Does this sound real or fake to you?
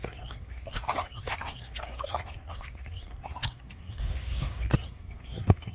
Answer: fake